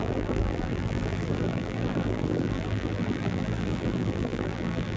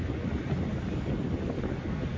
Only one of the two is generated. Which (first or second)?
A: first